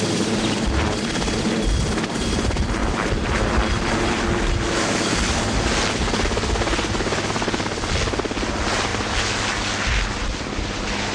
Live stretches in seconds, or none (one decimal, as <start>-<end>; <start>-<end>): 0.0-11.1